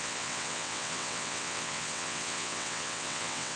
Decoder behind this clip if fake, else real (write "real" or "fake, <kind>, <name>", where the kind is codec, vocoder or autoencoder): fake, vocoder, WaveNeXt